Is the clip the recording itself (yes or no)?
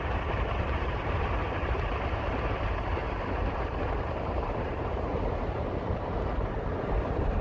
no